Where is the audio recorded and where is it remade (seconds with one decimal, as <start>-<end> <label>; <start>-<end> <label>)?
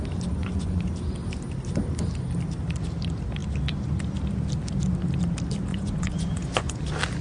0.0-0.4 recorded; 0.4-0.9 remade; 0.9-5.7 recorded; 5.7-6.8 remade; 6.8-7.2 recorded